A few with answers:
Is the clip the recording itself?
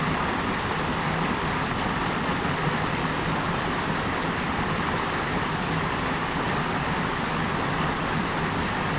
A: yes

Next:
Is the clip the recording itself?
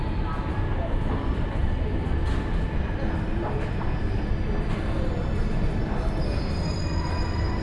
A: yes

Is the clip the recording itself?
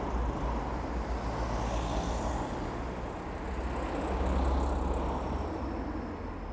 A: yes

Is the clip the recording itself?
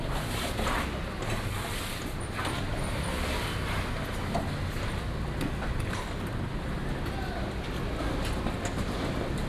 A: yes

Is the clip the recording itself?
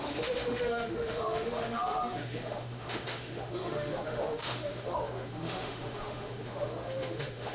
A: no